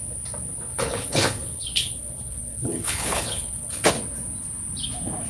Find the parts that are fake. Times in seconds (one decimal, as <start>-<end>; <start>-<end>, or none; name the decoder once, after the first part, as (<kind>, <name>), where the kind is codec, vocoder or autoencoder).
0.7-3.9 (codec, HILCodec)